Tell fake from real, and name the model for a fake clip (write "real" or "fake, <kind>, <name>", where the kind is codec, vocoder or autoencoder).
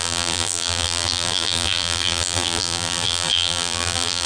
fake, vocoder, BigVGAN v2